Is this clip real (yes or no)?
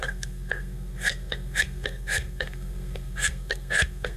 no